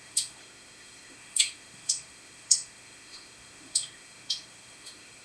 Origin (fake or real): fake